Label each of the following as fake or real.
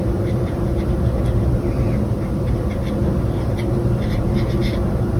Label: real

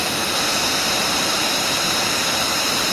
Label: real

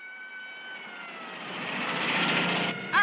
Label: real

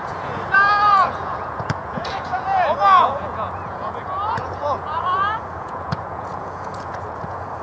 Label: fake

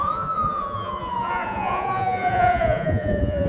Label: fake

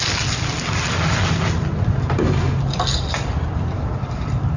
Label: real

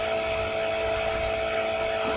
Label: real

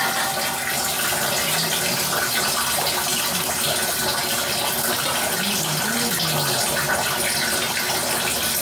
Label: real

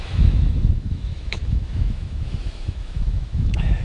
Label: fake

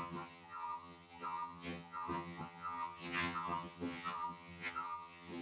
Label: fake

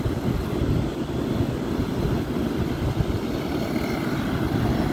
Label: real